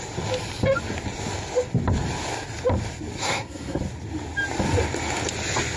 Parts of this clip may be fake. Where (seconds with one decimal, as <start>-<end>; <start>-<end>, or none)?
3.2-3.8